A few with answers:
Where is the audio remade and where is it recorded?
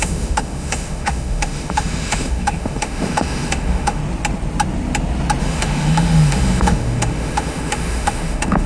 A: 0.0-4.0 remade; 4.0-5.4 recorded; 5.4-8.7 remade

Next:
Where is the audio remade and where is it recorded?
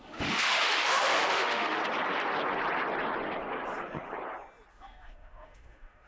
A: 0.0-1.8 remade; 1.8-4.7 recorded; 4.7-6.1 remade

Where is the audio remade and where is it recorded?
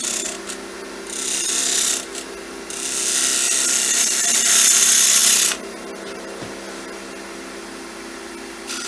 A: 0.0-8.9 recorded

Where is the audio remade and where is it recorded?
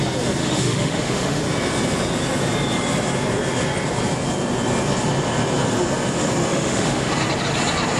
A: 0.0-0.4 recorded; 0.4-1.4 remade; 1.4-6.5 recorded; 6.5-7.1 remade; 7.1-8.0 recorded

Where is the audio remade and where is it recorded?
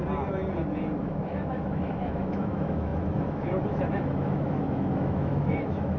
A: 0.0-1.0 recorded; 1.0-6.0 remade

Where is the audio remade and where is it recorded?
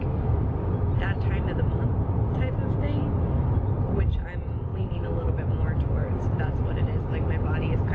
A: 0.0-4.7 recorded; 4.7-5.4 remade; 5.4-7.9 recorded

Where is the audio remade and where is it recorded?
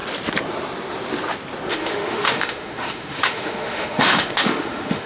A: 0.0-1.7 recorded; 1.7-5.1 remade